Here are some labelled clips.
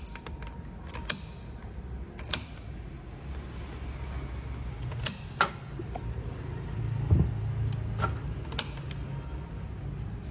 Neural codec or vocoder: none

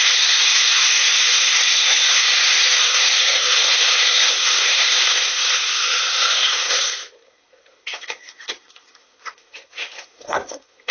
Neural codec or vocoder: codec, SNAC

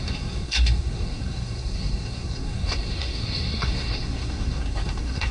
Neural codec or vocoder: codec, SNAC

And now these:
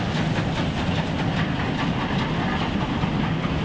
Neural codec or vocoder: none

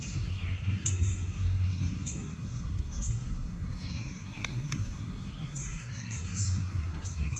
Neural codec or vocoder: codec, SNAC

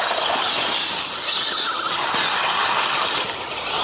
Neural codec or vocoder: none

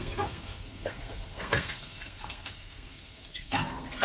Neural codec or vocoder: codec, SNAC